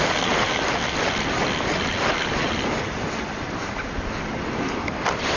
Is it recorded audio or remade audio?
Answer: remade